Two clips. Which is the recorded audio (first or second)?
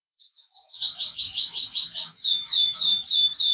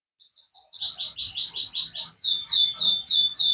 second